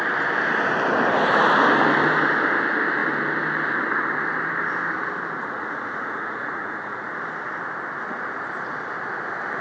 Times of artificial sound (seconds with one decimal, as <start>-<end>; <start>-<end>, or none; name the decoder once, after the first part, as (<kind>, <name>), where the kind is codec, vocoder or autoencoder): 5.4-7.1 (vocoder, Vocos)